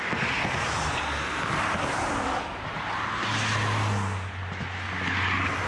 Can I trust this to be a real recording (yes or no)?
yes